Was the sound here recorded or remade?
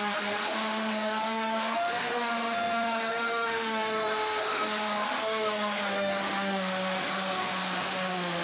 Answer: remade